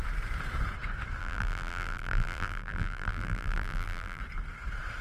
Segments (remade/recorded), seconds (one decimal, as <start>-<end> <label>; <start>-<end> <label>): 0.0-1.2 recorded; 1.2-4.2 remade; 4.2-5.0 recorded